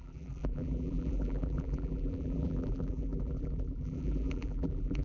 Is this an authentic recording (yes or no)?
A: no